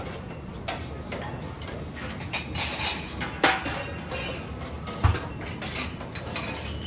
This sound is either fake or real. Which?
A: real